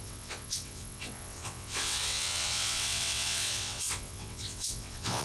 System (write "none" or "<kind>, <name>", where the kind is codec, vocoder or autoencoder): vocoder, WaveNeXt